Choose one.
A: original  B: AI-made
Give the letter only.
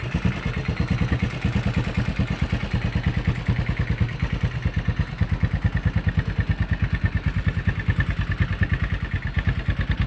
A